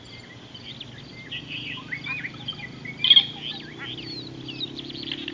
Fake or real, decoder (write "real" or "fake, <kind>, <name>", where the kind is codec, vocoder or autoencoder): real